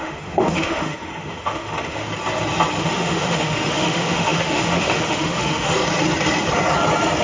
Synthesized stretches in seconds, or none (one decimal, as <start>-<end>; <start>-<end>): 0.0-2.1; 2.8-5.8